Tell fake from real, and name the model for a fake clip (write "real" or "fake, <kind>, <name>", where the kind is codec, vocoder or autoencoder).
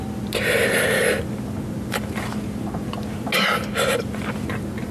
real